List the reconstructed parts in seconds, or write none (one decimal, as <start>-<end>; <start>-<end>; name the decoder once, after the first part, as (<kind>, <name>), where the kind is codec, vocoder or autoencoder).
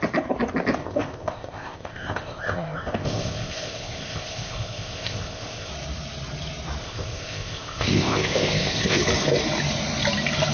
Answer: 0.8-5.7 (codec, ZipCodec); 6.8-9.0